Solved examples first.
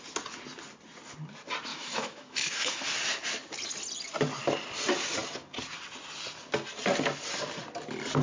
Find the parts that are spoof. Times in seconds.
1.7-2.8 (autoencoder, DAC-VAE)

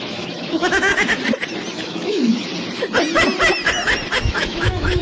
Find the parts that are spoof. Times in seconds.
0.0-0.9 (autoencoder, DAC-VAE); 1.7-2.5; 4.2-5.0

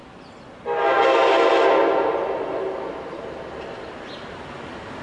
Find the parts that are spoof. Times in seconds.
none

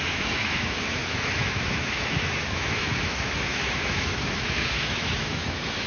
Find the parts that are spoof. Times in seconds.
0.0-5.9 (autoencoder, DAC-VAE)

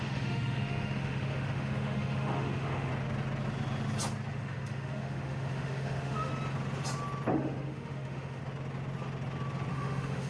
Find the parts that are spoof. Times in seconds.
0.0-2.9 (autoencoder, DAC-VAE); 4.3-6.3; 7.3-8.4; 9.7-10.3

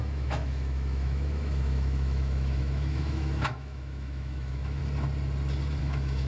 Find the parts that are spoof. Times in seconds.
0.0-4.8 (autoencoder, DAC-VAE); 5.8-6.3

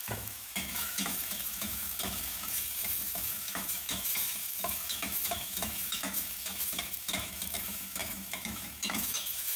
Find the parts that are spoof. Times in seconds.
0.0-9.6 (autoencoder, DAC-VAE)